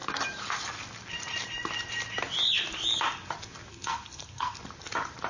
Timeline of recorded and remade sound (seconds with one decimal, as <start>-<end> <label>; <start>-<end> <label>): 0.0-3.7 recorded; 3.7-4.6 remade; 4.6-5.3 recorded